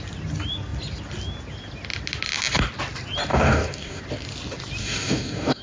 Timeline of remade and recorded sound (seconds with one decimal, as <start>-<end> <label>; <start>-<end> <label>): 0.0-3.3 recorded; 3.3-4.0 remade; 4.0-4.8 recorded; 4.8-5.6 remade